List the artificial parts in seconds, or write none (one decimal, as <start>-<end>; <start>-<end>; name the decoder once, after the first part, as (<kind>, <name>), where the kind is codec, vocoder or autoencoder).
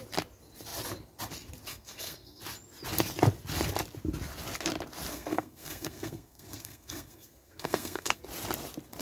1.7-2.4 (codec, SNAC); 5.1-8.2